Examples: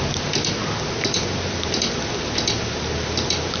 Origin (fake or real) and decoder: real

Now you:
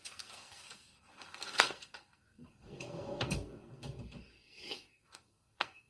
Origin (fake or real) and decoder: fake, codec, SNAC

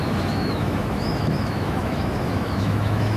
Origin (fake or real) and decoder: fake, autoencoder, DAC-VAE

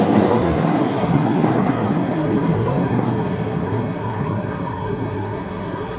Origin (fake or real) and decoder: fake, codec, SNAC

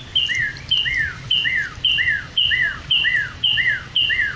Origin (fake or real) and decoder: real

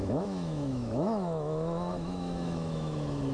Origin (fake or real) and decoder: fake, autoencoder, DAC-VAE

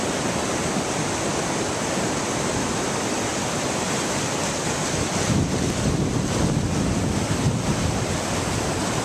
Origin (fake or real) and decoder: real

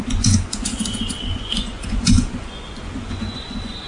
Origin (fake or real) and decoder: fake, vocoder, Vocos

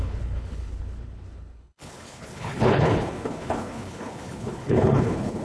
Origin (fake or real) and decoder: fake, codec, HILCodec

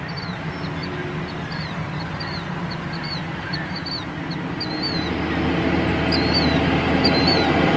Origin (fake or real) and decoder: real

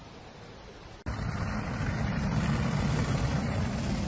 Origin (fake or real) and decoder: real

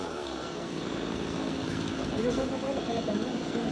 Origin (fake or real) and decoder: fake, codec, SNAC